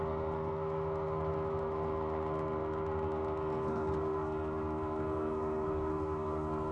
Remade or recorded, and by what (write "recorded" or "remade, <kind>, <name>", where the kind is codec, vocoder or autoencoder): remade, codec, SNAC